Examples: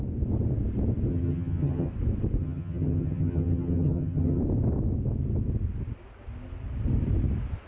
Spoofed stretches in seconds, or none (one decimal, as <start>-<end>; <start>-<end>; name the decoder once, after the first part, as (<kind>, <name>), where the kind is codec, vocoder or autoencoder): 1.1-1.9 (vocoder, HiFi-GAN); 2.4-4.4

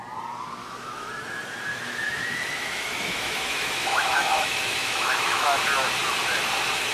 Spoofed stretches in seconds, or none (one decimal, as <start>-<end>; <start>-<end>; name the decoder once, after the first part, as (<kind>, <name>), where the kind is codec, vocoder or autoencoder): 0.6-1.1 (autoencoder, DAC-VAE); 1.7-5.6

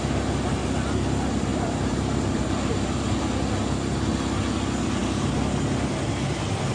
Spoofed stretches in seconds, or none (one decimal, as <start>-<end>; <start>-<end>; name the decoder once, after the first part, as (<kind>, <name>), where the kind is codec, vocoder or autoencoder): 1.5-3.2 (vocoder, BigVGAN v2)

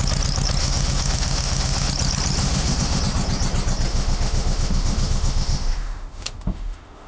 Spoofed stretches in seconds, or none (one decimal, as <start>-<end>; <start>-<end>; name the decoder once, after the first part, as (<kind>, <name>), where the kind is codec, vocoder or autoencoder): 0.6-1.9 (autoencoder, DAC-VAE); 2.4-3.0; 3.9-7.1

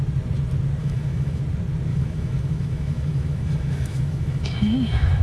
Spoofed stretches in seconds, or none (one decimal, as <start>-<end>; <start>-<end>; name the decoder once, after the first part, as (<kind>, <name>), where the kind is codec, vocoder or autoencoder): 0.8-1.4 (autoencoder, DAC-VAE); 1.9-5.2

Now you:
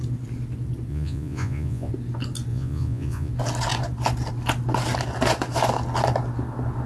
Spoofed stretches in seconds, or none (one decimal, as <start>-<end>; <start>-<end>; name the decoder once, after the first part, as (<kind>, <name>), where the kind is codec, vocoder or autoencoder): 0.9-1.9 (vocoder, Vocos); 2.5-3.3

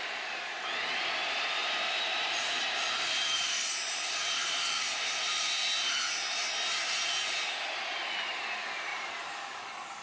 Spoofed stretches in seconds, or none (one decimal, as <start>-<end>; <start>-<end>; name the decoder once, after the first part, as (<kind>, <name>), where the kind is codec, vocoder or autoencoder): 1.6-6.4 (vocoder, BigVGAN v2); 8.9-9.6